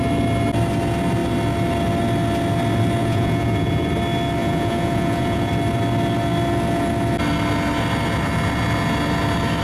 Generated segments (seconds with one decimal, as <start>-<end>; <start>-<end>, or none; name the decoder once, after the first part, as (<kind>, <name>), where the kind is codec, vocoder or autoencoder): 3.0-3.9 (vocoder, Vocos); 4.4-5.5